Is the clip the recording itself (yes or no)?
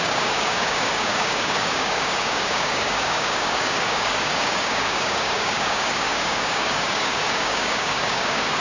no